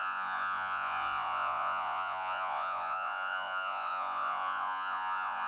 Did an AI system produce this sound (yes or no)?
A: yes